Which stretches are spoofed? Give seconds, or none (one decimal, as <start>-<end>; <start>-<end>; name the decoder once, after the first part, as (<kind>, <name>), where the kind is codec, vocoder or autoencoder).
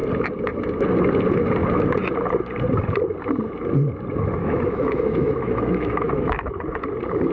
4.4-6.5 (autoencoder, DAC-VAE)